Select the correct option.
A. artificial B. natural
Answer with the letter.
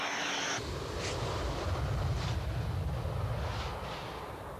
B